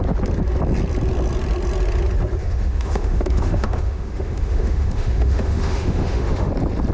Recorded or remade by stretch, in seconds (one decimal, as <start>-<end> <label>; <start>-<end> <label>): 0.0-2.4 recorded; 2.4-6.5 remade; 6.5-6.9 recorded